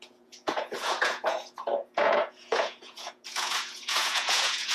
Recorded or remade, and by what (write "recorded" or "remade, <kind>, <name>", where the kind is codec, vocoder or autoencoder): remade, vocoder, Vocos